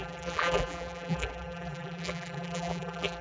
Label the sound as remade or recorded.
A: remade